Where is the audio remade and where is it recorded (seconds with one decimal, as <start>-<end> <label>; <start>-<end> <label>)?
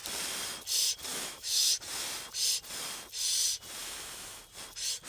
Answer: 0.0-1.1 recorded; 1.1-1.7 remade; 1.7-3.8 recorded; 3.8-4.4 remade; 4.4-5.1 recorded